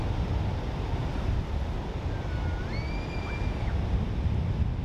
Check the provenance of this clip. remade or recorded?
recorded